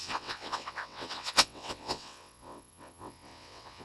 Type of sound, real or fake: fake